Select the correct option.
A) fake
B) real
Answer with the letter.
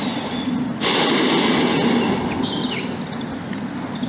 B